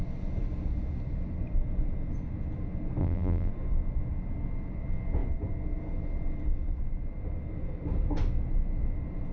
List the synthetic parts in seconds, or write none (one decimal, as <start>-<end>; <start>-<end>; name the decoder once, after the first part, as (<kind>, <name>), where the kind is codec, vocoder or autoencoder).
3.0-3.5 (vocoder, BigVGAN v2)